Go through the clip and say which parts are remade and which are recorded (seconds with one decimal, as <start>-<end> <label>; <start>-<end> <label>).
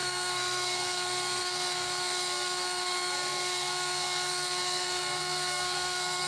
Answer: 0.0-6.3 remade